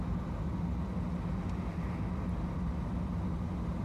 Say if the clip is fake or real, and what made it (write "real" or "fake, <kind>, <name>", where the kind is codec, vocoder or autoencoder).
real